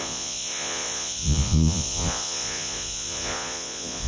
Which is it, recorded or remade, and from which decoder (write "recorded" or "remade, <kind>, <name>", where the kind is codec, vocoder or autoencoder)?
remade, vocoder, Vocos